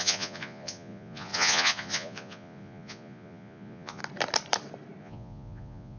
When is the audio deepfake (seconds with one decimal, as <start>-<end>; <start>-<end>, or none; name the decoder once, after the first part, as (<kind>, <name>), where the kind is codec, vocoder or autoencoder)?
0.0-4.0 (vocoder, Vocos); 5.0-6.0